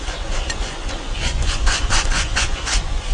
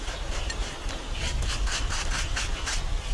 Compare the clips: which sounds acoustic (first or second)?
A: second